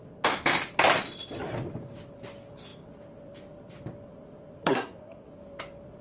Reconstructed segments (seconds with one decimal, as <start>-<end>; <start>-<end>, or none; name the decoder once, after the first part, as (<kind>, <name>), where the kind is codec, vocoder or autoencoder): 4.6-5.3 (codec, SNAC)